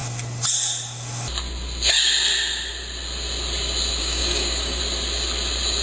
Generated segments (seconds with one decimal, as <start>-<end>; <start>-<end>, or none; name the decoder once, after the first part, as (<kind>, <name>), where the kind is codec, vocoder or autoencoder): 4.0-4.8 (codec, DAC)